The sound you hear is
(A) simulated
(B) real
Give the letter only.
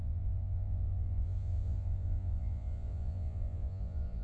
A